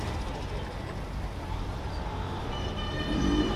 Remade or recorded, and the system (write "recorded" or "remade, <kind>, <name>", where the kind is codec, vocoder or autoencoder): recorded